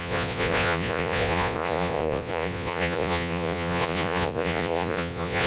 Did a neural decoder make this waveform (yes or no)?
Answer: yes